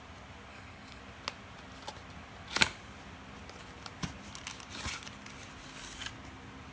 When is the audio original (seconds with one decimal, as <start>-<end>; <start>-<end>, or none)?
0.0-0.5; 1.0-6.7